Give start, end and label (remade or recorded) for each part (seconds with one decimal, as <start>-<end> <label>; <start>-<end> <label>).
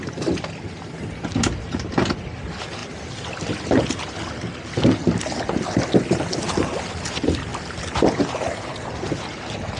0.0-2.8 recorded; 2.8-4.3 remade; 4.3-7.5 recorded; 7.5-8.2 remade; 8.2-9.8 recorded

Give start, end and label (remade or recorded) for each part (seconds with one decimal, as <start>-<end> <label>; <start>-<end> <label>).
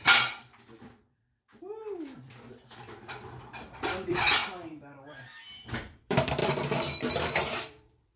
0.0-6.4 remade; 6.4-7.1 recorded; 7.1-8.2 remade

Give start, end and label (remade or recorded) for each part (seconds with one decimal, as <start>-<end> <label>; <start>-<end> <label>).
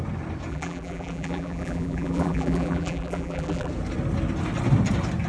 0.0-0.5 recorded; 0.5-3.7 remade; 3.7-5.3 recorded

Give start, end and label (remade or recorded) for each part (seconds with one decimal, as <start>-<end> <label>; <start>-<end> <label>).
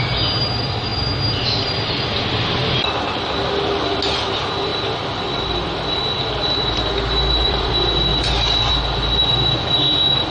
0.0-4.7 recorded; 4.7-7.7 remade; 7.7-10.3 recorded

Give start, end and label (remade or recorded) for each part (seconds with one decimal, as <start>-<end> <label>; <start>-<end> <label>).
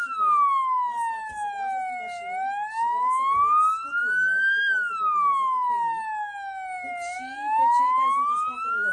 0.0-8.9 recorded